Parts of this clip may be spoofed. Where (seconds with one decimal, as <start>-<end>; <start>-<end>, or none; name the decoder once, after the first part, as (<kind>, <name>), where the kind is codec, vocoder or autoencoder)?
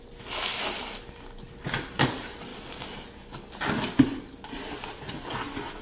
none